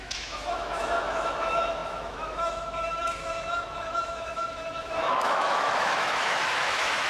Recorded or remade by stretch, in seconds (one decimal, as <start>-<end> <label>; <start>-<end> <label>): 0.0-7.1 remade